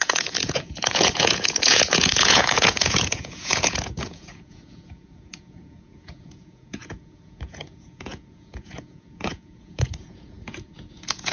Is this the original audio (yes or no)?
no